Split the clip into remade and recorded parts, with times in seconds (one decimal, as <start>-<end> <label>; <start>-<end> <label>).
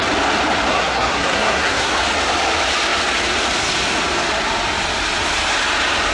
0.0-0.7 recorded; 0.7-1.9 remade; 1.9-6.1 recorded